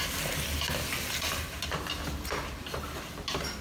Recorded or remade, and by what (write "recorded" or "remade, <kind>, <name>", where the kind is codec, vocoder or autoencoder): recorded